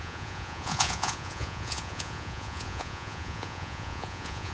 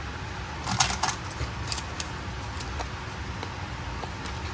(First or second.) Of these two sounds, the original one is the second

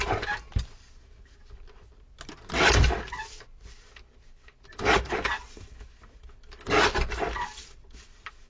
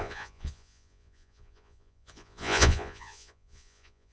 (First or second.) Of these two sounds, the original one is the first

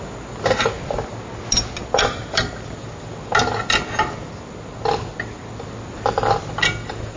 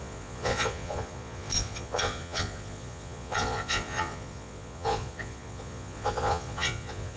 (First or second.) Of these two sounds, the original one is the first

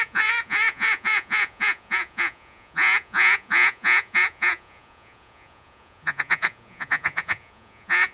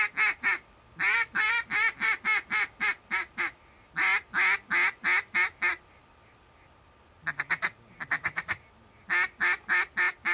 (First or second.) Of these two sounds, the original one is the second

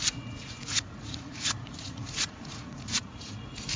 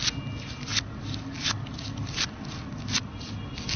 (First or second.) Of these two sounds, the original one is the second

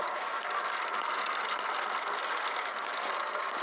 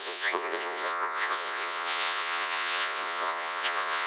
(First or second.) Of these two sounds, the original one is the first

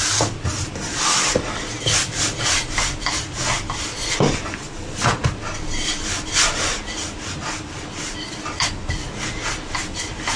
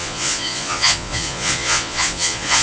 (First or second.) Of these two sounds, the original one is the first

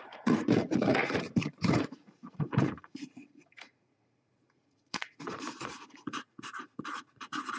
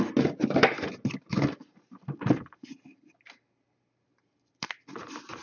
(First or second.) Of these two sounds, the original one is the second